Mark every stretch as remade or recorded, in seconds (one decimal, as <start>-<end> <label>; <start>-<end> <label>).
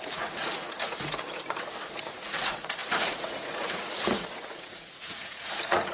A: 0.0-5.9 remade